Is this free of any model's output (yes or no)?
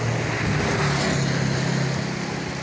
yes